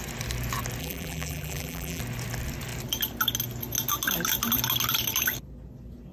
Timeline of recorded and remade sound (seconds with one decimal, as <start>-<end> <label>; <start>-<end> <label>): 0.0-0.8 recorded; 0.8-2.0 remade; 2.0-6.1 recorded